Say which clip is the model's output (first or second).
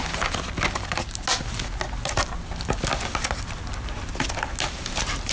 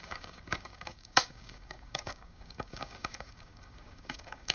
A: second